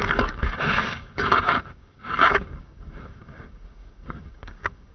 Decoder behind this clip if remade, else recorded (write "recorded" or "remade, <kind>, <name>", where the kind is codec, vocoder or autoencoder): remade, codec, DAC